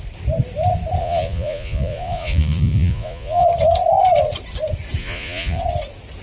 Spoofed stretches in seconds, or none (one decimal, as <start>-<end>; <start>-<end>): 1.0-3.5; 5.0-5.6